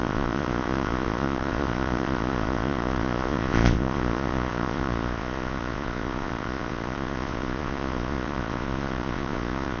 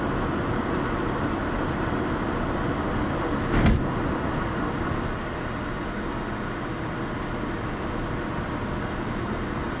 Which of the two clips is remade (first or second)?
first